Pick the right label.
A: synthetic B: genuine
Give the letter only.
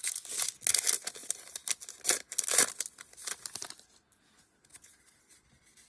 B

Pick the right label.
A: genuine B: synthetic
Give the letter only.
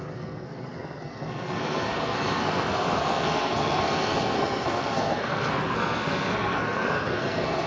B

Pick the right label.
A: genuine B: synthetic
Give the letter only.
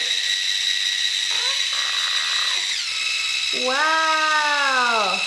A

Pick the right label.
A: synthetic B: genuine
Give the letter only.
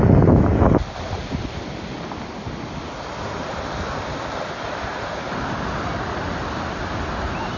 B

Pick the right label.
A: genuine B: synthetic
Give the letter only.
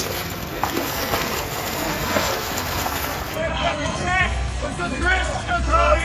B